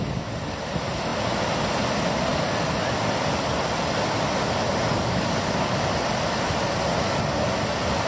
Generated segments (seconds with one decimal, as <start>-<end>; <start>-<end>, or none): 4.9-5.5